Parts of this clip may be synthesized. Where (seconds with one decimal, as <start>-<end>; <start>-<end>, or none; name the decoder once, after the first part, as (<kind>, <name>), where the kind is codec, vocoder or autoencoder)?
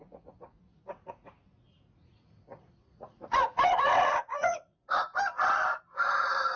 0.0-5.1 (vocoder, Vocos)